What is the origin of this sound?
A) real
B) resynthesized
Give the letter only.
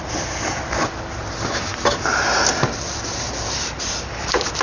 A